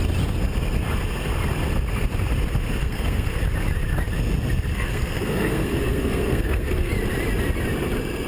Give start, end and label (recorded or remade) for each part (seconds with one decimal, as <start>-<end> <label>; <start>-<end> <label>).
0.0-2.8 recorded; 2.8-3.4 remade; 3.4-4.7 recorded; 4.7-6.9 remade; 6.9-8.3 recorded

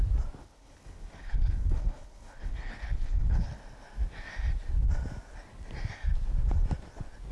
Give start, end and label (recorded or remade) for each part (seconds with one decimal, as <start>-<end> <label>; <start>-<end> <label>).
0.0-0.4 recorded; 0.4-3.6 remade; 3.6-7.3 recorded